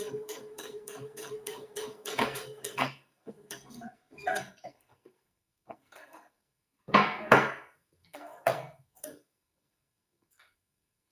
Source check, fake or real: fake